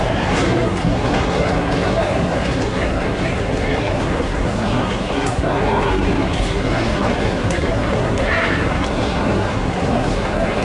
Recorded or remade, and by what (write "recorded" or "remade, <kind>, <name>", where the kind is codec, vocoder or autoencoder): remade, codec, SNAC